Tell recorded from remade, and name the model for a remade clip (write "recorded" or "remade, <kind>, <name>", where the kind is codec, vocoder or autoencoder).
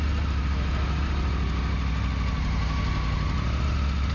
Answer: recorded